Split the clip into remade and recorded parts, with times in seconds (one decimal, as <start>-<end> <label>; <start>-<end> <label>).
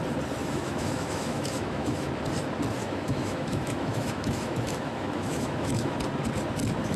0.0-0.4 recorded; 0.4-2.1 remade; 2.1-2.8 recorded; 2.8-6.0 remade; 6.0-7.0 recorded